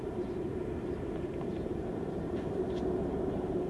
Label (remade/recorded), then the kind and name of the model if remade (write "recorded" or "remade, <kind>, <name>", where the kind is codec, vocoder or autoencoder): remade, vocoder, BigVGAN v2